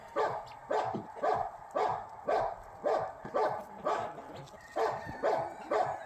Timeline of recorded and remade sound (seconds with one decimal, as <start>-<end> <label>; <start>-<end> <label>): 0.0-1.9 remade; 1.9-5.6 recorded; 5.6-6.1 remade